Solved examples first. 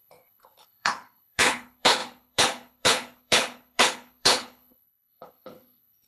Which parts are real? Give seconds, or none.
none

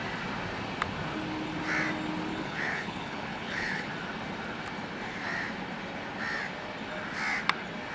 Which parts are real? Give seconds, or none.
0.0-2.3; 3.9-7.9

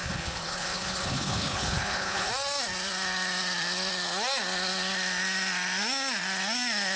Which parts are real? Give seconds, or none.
2.3-7.0

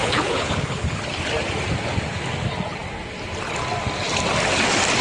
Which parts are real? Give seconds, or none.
1.0-5.0